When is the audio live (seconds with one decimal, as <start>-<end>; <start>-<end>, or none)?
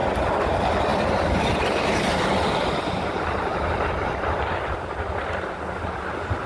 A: 0.0-0.9; 4.8-6.5